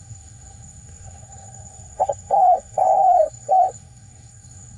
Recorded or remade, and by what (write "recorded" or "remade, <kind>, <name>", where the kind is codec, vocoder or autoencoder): remade, codec, SNAC